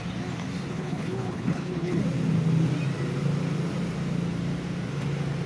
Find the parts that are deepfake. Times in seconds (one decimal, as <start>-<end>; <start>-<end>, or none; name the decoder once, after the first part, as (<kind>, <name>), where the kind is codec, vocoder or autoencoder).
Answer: 0.7-2.0 (codec, HILCodec)